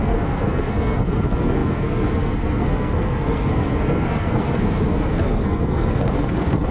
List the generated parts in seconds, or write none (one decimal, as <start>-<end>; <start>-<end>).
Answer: 0.0-6.7